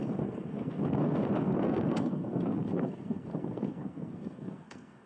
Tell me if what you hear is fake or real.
fake